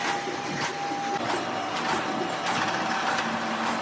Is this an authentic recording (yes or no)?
yes